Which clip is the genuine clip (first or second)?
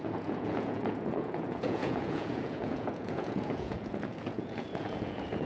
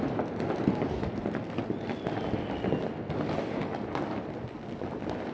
second